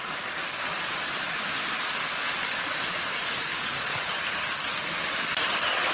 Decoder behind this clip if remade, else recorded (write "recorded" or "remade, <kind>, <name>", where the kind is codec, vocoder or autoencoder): recorded